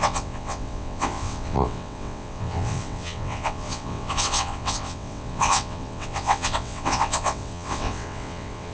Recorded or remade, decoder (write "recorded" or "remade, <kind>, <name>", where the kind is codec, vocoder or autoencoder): remade, vocoder, WaveNeXt